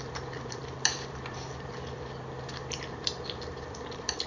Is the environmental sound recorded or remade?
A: remade